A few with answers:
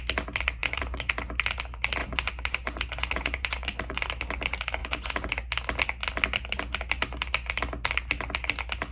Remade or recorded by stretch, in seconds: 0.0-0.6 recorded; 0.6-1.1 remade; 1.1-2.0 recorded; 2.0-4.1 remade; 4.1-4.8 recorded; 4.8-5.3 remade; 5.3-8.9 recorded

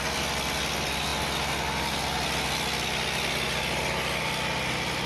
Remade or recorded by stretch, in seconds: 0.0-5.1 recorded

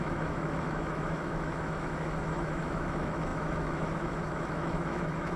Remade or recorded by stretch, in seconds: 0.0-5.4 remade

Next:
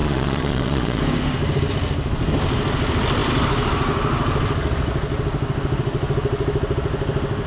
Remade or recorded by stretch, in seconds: 0.0-1.0 remade; 1.0-7.5 recorded

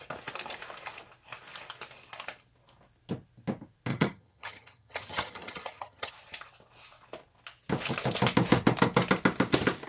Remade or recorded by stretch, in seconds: 0.0-3.9 recorded; 3.9-6.1 remade; 6.1-9.9 recorded

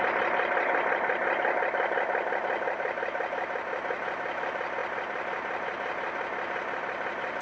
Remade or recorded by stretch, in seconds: 0.0-7.4 recorded

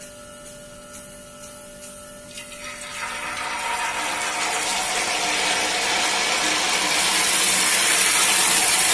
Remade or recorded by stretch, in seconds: 0.0-8.9 recorded